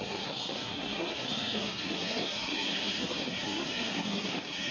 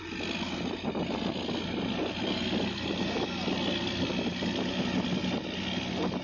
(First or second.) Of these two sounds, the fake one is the first